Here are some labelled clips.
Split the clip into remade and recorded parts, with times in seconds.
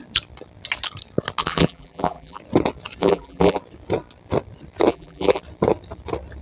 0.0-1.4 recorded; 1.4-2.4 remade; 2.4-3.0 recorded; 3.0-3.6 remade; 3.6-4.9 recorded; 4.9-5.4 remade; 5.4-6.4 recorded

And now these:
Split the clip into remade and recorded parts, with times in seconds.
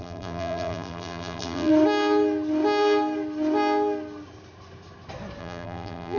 0.0-1.7 remade; 1.7-5.4 recorded; 5.4-6.2 remade